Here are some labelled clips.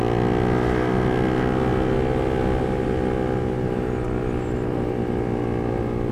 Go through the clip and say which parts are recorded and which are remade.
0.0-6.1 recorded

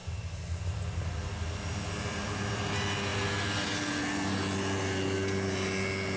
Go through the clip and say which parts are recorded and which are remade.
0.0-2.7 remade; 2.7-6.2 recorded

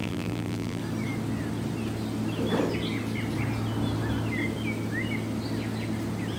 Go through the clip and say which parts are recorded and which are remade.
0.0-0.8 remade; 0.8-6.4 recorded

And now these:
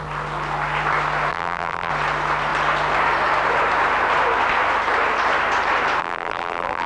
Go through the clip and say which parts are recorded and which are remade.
0.0-1.3 recorded; 1.3-1.9 remade; 1.9-6.0 recorded; 6.0-6.9 remade

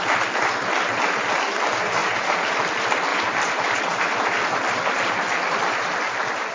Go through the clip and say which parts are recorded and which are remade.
0.0-2.0 recorded; 2.0-2.5 remade; 2.5-3.1 recorded; 3.1-3.8 remade; 3.8-6.5 recorded

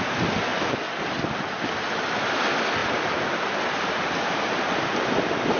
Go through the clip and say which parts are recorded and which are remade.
0.0-5.6 recorded

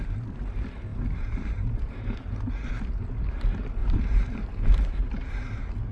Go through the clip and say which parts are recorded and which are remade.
0.0-0.9 recorded; 0.9-2.7 remade; 2.7-3.8 recorded; 3.8-5.0 remade; 5.0-5.9 recorded

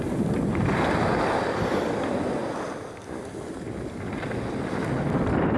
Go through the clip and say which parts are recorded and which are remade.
0.0-1.1 recorded; 1.1-1.8 remade; 1.8-5.6 recorded